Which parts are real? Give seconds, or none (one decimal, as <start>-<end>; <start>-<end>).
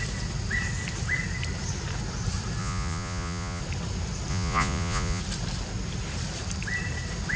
0.0-2.6; 3.6-4.3; 5.2-7.4